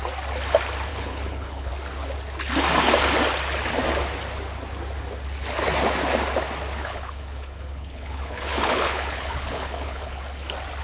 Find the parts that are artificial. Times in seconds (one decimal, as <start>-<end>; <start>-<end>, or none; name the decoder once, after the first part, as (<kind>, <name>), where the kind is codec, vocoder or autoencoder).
0.9-1.7 (codec, HILCodec); 6.8-10.2